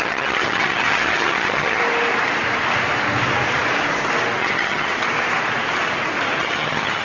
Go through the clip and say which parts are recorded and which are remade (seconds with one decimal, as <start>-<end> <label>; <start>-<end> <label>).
0.0-1.8 remade; 1.8-4.4 recorded; 4.4-4.9 remade; 4.9-6.4 recorded; 6.4-7.0 remade